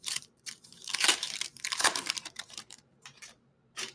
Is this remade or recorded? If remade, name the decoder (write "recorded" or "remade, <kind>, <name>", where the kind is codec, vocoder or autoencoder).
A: remade, vocoder, BigVGAN v2